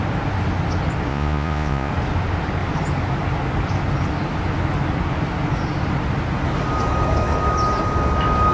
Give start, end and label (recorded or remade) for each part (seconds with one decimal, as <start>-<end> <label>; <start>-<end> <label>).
0.0-1.1 recorded; 1.1-1.9 remade; 1.9-8.5 recorded